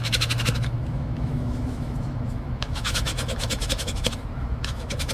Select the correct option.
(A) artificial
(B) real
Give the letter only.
A